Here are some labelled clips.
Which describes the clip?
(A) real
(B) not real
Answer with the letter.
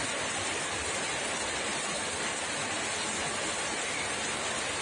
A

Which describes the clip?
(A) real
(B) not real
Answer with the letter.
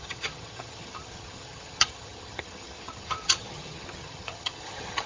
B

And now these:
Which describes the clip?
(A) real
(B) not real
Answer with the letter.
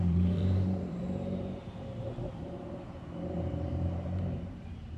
B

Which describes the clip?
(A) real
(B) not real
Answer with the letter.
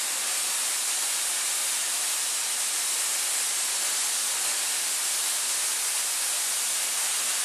A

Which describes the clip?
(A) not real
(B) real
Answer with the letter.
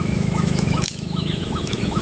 A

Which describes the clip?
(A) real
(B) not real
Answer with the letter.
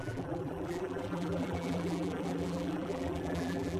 B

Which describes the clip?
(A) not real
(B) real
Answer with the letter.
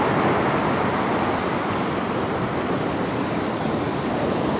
B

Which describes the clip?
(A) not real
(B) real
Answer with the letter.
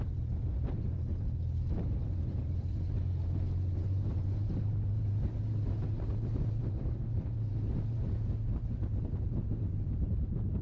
A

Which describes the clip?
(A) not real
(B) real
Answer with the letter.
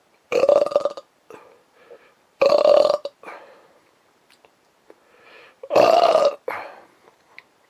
A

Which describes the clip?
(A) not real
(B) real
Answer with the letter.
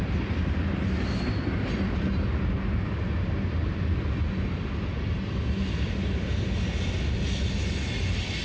B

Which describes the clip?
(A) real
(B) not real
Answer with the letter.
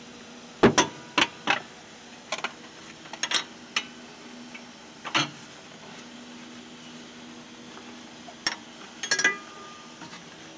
A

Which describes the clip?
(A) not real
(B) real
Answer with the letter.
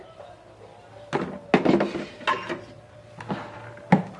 B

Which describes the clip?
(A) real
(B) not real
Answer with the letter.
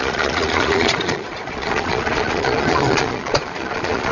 B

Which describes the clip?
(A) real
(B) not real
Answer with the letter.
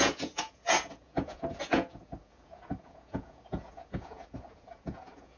B